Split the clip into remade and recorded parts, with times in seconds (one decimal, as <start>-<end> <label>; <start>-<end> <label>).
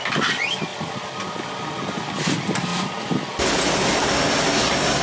0.0-5.0 recorded